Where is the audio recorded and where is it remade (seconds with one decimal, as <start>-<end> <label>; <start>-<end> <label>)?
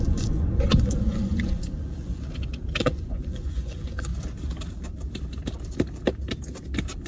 0.0-2.2 remade; 2.2-2.8 recorded; 2.8-4.1 remade; 4.1-7.1 recorded